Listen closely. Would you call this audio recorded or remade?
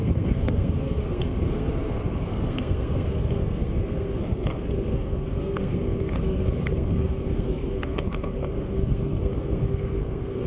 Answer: remade